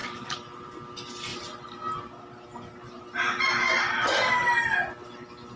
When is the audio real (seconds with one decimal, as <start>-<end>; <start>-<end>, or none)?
0.6-5.6